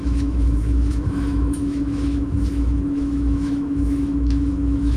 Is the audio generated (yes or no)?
yes